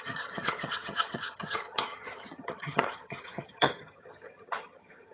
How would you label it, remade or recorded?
remade